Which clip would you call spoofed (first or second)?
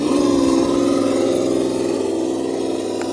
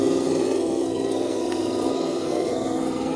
second